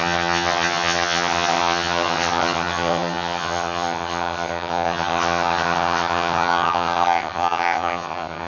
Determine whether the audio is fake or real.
fake